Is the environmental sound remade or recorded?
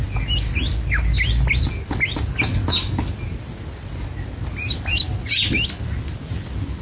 recorded